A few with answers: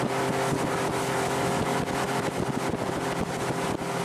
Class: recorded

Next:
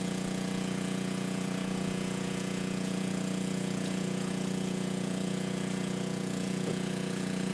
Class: remade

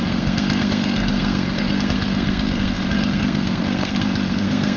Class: remade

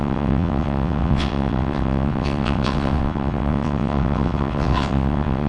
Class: remade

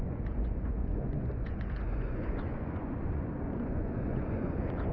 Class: remade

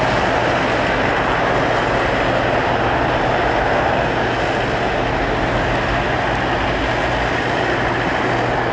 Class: recorded